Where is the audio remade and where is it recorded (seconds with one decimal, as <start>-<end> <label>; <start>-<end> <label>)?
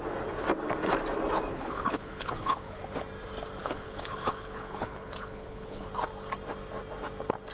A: 0.0-1.5 recorded; 1.5-2.8 remade; 2.8-3.6 recorded; 3.6-5.9 remade; 5.9-7.5 recorded